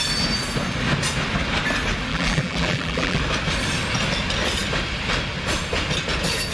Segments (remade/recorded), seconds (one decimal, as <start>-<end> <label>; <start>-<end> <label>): 0.0-2.1 recorded; 2.1-3.2 remade; 3.2-6.5 recorded